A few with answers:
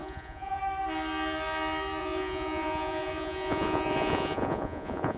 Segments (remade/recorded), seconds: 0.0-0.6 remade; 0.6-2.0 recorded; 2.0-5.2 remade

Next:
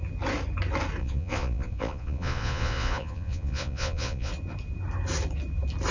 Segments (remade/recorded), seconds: 0.0-1.0 recorded; 1.0-4.3 remade; 4.3-5.9 recorded

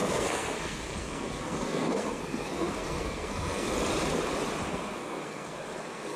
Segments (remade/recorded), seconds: 0.0-3.7 remade; 3.7-4.7 recorded; 4.7-6.2 remade

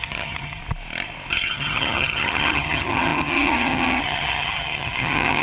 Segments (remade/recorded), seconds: 0.0-0.6 remade; 0.6-1.3 recorded; 1.3-5.4 remade